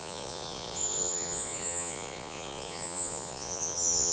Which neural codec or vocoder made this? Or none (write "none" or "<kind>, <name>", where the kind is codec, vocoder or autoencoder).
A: vocoder, Vocos